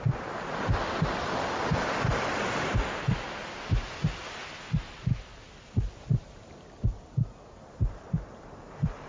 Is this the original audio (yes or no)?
no